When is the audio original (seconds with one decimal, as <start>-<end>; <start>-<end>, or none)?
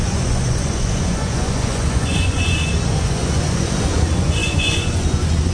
none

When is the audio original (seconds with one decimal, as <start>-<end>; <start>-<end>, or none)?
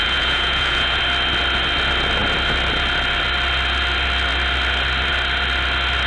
1.0-6.1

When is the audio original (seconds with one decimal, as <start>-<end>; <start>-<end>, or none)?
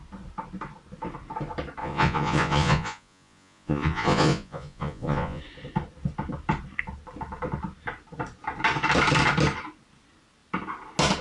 0.0-1.8; 5.4-11.2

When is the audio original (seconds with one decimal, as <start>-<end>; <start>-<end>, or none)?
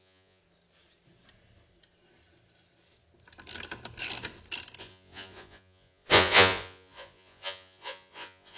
0.4-4.8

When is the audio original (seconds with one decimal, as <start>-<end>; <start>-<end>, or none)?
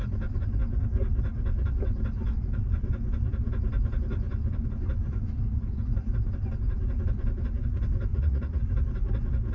0.0-8.1; 8.6-9.5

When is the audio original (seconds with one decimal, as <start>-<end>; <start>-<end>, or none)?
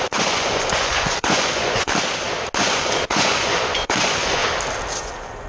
1.9-2.6; 4.4-5.0